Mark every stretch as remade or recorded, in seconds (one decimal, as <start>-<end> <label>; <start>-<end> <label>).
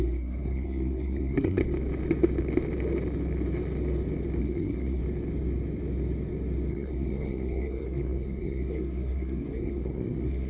0.0-1.6 remade; 1.6-4.4 recorded; 4.4-5.0 remade; 5.0-6.7 recorded; 6.7-10.5 remade